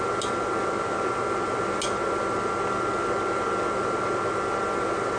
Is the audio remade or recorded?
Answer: recorded